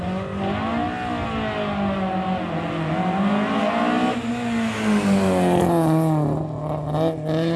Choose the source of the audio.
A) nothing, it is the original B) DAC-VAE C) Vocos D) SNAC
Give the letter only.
A